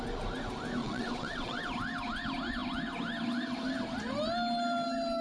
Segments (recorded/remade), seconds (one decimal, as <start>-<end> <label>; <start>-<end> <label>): 0.0-0.8 recorded; 0.8-1.6 remade; 1.6-5.2 recorded